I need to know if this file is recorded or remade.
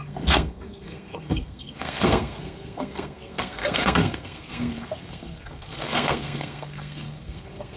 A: remade